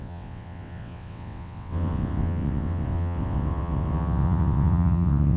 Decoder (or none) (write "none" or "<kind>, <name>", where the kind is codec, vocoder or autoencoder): vocoder, WaveNeXt